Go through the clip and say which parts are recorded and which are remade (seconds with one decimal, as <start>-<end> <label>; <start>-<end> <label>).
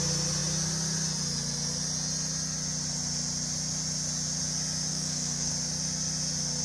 0.0-4.9 recorded; 4.9-5.5 remade; 5.5-6.6 recorded